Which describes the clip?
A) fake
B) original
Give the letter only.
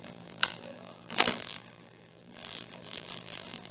A